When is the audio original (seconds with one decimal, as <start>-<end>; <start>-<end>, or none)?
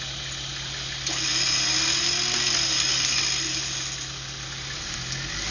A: 0.0-5.5